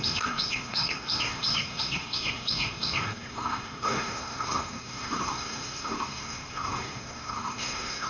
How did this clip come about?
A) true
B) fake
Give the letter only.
B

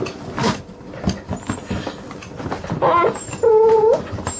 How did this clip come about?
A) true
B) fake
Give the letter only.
A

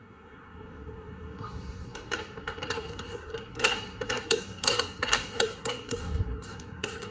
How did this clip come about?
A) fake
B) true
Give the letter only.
A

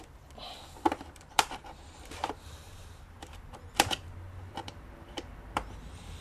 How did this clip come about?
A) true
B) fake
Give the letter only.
B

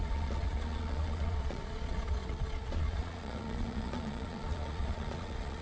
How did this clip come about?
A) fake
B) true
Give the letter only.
A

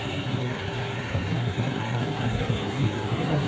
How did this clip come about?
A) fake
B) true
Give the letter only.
A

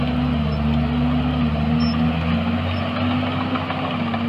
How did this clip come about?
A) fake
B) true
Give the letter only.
B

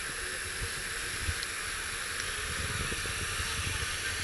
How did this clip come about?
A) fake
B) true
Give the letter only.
B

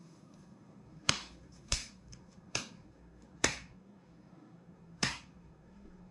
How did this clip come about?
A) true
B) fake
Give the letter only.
B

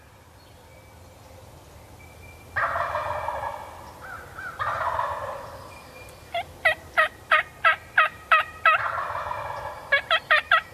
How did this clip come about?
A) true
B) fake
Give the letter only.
A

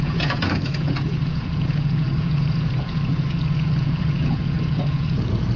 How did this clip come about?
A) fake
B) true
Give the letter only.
A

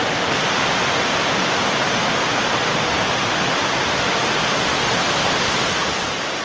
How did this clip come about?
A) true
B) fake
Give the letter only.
A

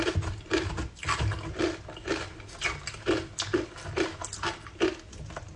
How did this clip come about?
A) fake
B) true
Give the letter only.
B